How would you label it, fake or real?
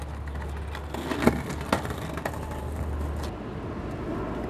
real